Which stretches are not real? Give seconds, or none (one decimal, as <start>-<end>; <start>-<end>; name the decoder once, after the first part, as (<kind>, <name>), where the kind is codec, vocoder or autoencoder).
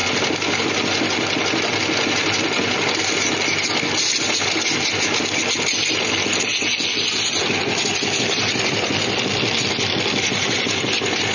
none